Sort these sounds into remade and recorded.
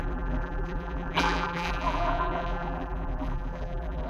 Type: remade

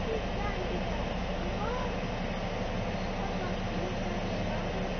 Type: recorded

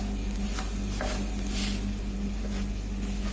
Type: recorded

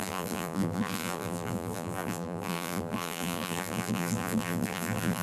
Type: remade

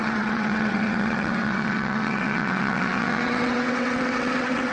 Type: remade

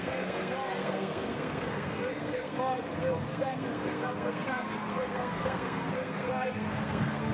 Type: remade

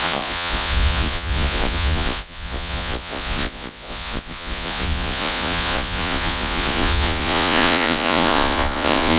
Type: remade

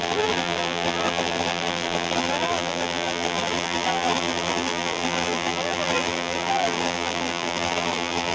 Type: remade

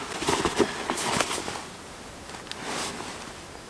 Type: recorded